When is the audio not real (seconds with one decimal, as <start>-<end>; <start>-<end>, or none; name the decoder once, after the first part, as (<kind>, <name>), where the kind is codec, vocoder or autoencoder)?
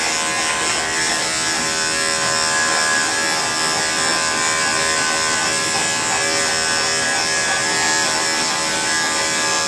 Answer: none